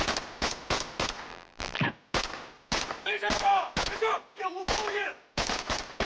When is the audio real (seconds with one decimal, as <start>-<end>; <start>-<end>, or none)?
0.0-1.3; 1.8-6.0